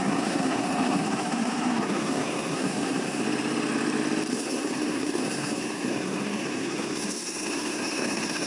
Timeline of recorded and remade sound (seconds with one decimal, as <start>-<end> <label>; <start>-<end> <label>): 0.0-3.2 remade; 3.2-4.3 recorded; 4.3-8.5 remade

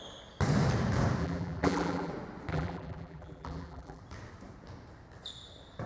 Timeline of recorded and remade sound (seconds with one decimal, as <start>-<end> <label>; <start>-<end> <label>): 0.0-1.2 recorded; 1.2-2.1 remade; 2.1-2.5 recorded; 2.5-4.0 remade; 4.0-5.9 recorded

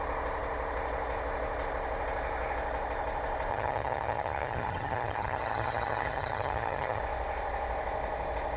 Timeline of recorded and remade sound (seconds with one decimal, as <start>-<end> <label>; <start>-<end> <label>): 0.0-3.5 recorded; 3.5-7.0 remade; 7.0-8.6 recorded

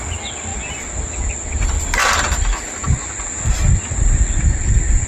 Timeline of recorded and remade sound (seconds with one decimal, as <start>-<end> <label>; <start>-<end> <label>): 0.0-5.1 recorded

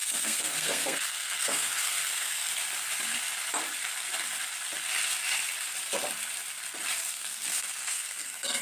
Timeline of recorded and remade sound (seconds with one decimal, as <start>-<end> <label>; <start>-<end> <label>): 0.0-2.5 remade; 2.5-7.1 recorded; 7.1-8.6 remade

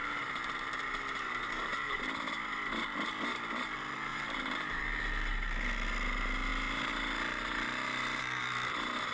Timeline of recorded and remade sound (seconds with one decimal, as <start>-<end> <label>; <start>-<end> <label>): 0.0-2.0 remade; 2.0-4.1 recorded; 4.1-4.8 remade; 4.8-9.1 recorded

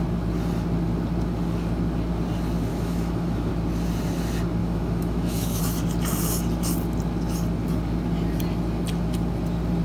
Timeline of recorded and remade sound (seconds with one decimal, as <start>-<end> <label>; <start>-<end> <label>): 0.0-2.7 recorded; 2.7-3.5 remade; 3.5-4.6 recorded; 4.6-5.6 remade; 5.6-9.8 recorded

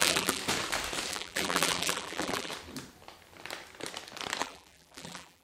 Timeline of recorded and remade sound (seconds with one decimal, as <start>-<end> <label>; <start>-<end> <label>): 0.0-0.4 remade; 0.4-1.1 recorded; 1.1-2.5 remade; 2.5-4.4 recorded; 4.4-5.4 remade